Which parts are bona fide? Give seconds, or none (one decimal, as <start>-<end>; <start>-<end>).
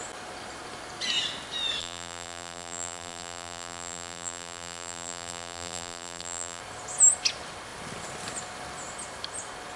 0.0-1.8; 6.6-9.8